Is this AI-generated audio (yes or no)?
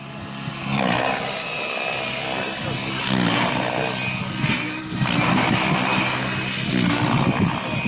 no